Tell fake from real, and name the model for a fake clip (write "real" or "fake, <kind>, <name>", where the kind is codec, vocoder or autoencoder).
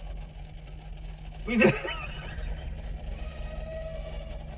real